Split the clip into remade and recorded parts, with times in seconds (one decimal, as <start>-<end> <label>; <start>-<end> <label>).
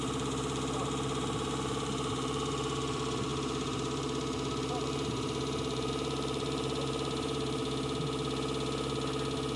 0.0-7.6 remade; 7.6-9.6 recorded